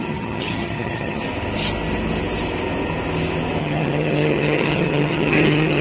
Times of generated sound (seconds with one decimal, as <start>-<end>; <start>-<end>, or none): 0.0-1.2; 3.6-5.8

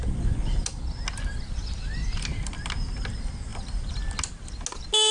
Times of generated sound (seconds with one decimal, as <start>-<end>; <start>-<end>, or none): none

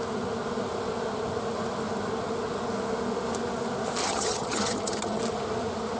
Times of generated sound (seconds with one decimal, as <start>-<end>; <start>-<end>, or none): 4.0-5.2